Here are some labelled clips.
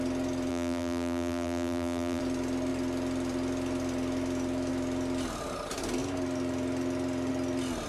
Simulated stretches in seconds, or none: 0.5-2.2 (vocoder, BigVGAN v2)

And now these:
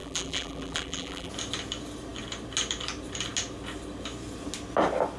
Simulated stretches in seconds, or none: 0.0-1.3 (vocoder, BigVGAN v2)